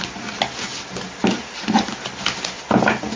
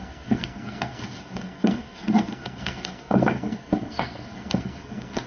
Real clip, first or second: first